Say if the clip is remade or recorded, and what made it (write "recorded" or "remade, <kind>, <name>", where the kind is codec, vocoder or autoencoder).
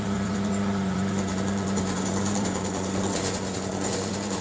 remade, vocoder, Vocos